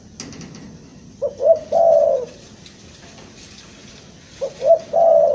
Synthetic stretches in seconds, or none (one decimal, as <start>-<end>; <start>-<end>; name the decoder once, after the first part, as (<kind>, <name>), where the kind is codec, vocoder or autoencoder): none